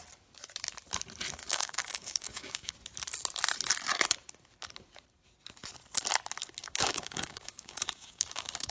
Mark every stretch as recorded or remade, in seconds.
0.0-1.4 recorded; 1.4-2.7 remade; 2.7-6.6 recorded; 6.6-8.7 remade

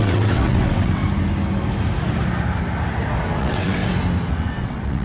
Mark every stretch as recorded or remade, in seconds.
0.0-1.0 remade; 1.0-3.4 recorded; 3.4-3.8 remade; 3.8-4.3 recorded; 4.3-5.0 remade